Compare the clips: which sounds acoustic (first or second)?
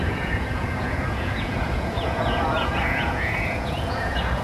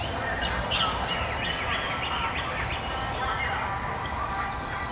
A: second